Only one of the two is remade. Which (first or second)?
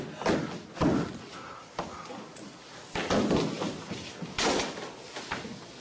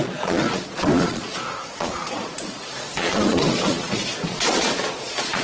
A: second